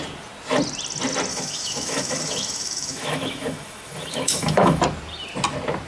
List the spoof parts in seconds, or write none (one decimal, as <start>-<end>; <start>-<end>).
1.3-4.8